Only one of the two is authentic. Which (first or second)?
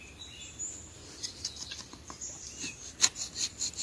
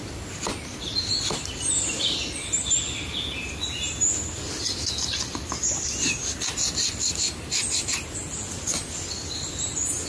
second